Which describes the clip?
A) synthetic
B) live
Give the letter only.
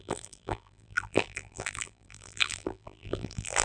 A